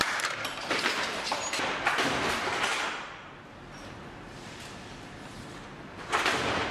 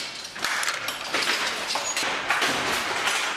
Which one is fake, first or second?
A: first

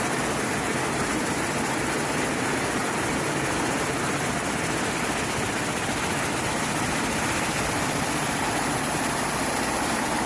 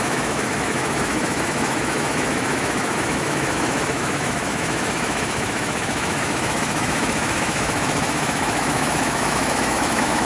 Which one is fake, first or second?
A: second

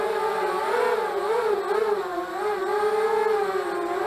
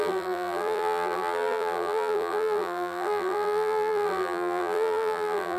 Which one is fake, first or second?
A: second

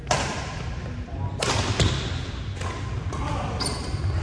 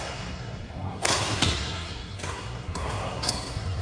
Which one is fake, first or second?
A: second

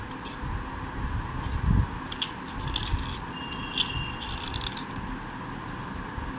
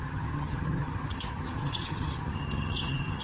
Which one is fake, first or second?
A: second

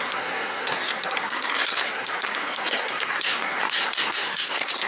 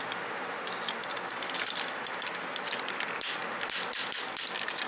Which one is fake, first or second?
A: first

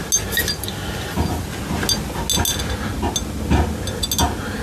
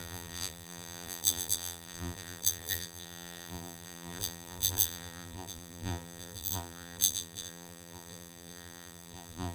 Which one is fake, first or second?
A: second